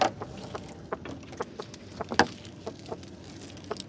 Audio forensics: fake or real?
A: real